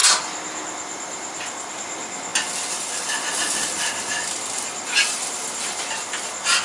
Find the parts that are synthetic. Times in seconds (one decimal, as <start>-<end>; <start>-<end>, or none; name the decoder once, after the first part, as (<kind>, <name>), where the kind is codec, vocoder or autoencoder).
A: none